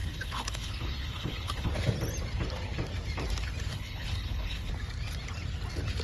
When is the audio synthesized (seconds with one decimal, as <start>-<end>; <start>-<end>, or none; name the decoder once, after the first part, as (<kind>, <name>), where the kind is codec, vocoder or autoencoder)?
0.0-1.7 (codec, HILCodec); 3.7-4.7